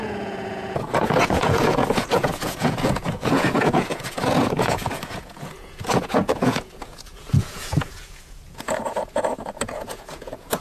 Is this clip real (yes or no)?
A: no